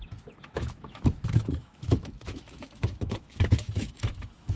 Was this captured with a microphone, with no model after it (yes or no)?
no